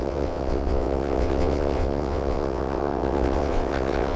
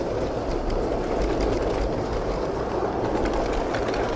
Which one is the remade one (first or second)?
first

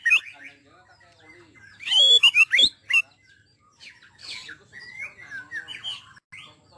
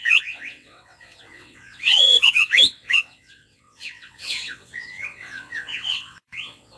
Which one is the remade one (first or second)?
second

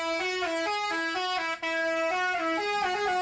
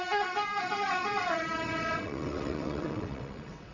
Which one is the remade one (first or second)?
second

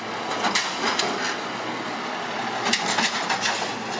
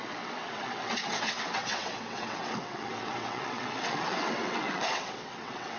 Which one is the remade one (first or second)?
second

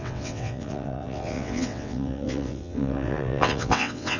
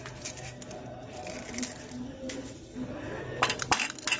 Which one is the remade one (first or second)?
first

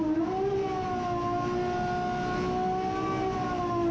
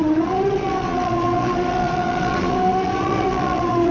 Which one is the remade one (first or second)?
second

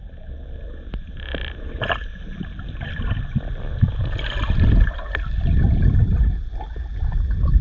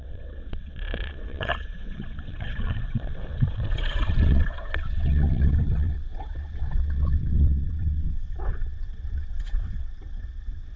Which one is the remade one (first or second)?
second